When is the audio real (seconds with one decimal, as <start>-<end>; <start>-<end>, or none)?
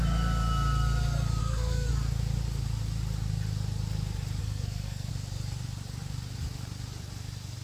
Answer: 0.0-1.4; 1.9-4.4; 5.1-7.6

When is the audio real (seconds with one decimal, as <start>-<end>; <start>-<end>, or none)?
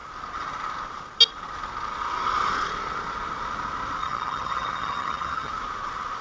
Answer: 0.0-4.0; 5.5-6.2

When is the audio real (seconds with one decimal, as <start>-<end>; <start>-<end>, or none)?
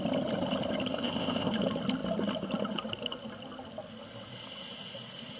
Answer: 0.0-0.9; 1.5-5.4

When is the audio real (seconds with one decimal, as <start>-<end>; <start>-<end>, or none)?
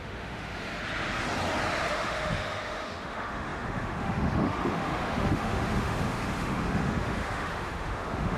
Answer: 0.7-1.9